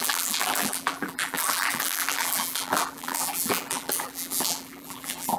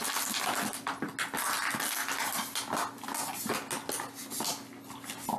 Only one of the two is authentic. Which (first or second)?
second